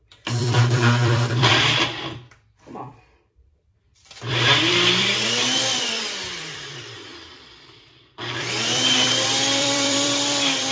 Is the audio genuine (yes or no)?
no